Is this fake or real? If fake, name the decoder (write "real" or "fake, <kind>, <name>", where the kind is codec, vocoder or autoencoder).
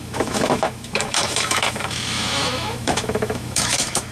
fake, autoencoder, DAC-VAE